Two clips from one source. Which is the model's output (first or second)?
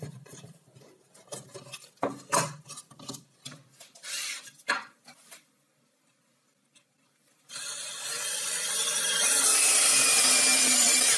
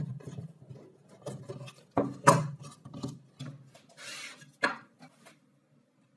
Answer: first